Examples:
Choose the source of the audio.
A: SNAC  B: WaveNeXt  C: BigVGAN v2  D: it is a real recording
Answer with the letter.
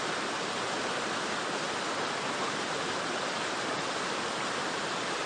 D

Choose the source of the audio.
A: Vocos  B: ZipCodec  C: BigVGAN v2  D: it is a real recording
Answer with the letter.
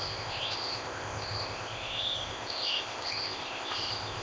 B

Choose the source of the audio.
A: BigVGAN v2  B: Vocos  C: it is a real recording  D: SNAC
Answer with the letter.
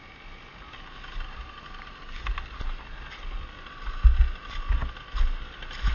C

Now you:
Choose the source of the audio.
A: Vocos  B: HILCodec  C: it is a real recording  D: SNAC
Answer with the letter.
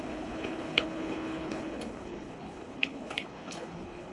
B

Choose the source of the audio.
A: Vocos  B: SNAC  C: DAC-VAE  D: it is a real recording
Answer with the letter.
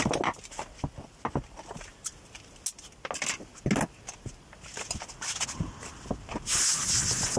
D